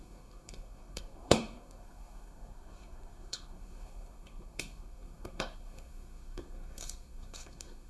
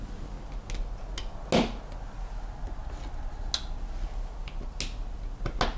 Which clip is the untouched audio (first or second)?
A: second